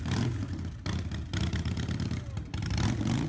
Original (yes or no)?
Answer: yes